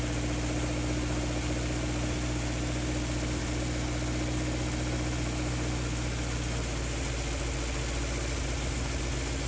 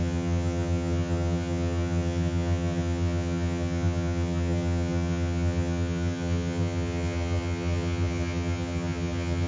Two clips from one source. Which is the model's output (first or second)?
second